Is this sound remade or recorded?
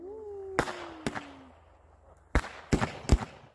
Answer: recorded